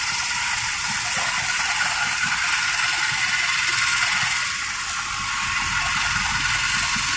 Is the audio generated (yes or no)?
no